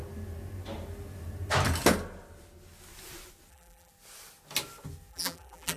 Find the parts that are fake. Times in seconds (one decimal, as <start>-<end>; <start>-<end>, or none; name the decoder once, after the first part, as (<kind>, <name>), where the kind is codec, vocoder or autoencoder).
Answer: 3.5-3.9 (vocoder, BigVGAN v2); 5.1-5.8